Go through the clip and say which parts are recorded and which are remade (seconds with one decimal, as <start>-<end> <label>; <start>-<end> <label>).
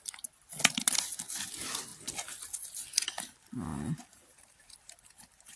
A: 0.0-3.7 recorded; 3.7-5.6 remade